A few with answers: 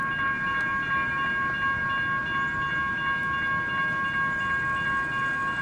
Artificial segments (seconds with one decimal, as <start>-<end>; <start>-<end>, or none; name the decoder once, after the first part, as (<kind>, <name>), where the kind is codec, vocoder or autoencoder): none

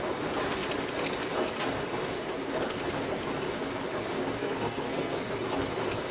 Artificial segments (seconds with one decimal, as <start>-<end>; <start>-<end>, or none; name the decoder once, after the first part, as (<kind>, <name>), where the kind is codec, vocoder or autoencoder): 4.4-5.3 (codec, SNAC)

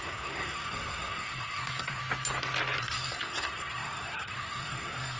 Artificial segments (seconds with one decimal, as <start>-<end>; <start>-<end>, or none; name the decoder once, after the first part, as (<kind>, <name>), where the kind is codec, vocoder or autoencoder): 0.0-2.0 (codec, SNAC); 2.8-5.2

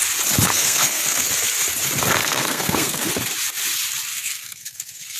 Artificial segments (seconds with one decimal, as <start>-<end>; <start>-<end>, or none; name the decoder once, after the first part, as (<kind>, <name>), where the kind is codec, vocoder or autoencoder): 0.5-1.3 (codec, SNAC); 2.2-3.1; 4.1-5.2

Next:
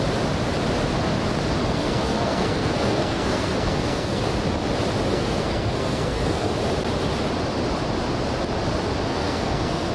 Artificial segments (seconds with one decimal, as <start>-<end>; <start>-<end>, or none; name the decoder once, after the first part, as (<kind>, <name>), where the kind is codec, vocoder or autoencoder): 1.6-4.2 (codec, SNAC); 5.1-6.5; 9.1-9.9

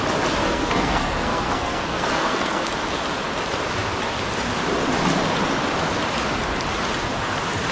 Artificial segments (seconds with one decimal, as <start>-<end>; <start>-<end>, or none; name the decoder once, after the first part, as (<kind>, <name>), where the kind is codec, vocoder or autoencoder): 0.4-2.7 (codec, SNAC)

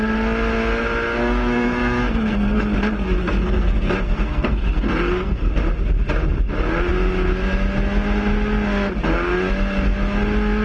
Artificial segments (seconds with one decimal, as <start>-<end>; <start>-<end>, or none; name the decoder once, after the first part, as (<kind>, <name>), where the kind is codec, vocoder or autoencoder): 1.2-2.6 (codec, SNAC); 3.2-5.5